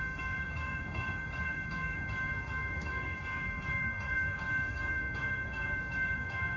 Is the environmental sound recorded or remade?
remade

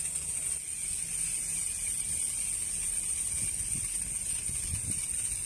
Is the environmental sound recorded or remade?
recorded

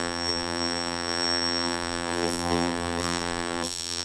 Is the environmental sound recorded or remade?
remade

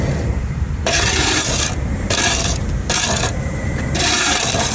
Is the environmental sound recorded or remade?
remade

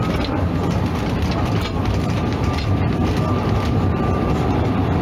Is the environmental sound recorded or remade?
recorded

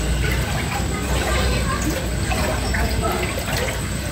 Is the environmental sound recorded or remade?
recorded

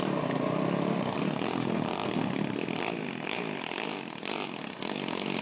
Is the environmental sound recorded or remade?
recorded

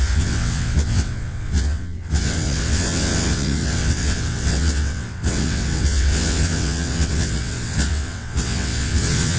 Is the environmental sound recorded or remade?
remade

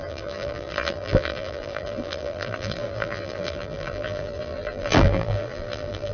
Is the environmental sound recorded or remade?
remade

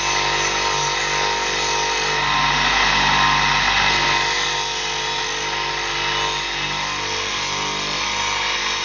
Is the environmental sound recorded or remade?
recorded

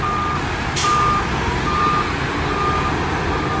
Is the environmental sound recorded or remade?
recorded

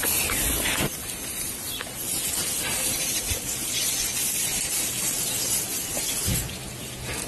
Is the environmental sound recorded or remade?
recorded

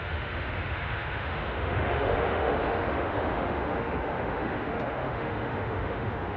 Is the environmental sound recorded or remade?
remade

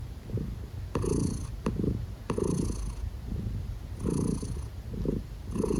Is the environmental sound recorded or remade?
recorded